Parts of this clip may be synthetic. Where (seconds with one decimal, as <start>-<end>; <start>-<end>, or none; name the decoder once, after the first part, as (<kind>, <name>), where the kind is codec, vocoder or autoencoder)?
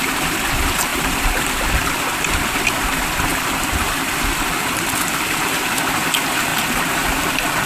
0.9-2.0 (vocoder, BigVGAN v2); 3.3-5.6; 6.5-7.7